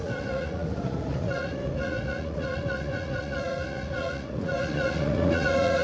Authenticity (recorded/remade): remade